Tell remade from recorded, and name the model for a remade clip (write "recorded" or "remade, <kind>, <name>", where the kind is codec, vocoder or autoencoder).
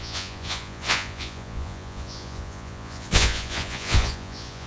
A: remade, vocoder, Vocos